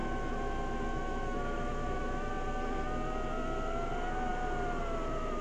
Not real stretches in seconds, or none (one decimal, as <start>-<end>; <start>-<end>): 0.0-2.3